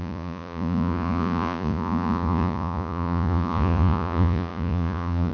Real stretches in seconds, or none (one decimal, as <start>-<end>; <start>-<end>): none